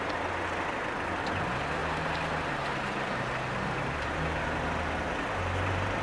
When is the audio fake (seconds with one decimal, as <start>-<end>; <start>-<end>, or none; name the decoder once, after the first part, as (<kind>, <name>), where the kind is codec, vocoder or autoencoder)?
1.8-4.3 (vocoder, BigVGAN v2)